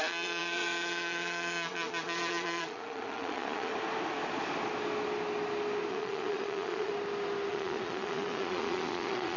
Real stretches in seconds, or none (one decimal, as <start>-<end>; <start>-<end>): 3.7-5.9; 6.9-7.5